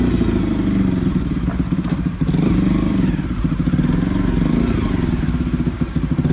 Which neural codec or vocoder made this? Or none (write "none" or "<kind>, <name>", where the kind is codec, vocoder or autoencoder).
none